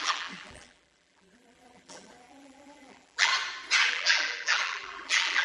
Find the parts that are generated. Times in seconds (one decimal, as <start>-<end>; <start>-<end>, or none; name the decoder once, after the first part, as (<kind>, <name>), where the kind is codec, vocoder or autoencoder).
0.0-3.3 (vocoder, BigVGAN v2); 3.9-5.4